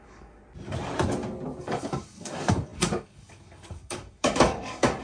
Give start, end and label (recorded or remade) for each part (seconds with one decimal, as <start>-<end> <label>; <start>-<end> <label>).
0.0-0.4 remade; 0.4-1.6 recorded; 1.6-5.0 remade